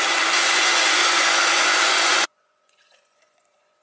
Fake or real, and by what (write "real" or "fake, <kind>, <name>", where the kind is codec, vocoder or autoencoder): fake, vocoder, Vocos